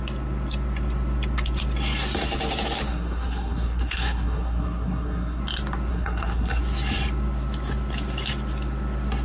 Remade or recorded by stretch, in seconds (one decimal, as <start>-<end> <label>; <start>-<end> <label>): 0.0-2.9 recorded; 2.9-5.4 remade; 5.4-5.9 recorded; 5.9-6.6 remade; 6.6-9.2 recorded